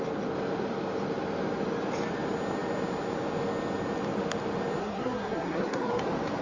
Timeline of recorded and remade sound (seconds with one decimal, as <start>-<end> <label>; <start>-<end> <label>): 0.0-4.8 recorded; 4.8-6.0 remade; 6.0-6.4 recorded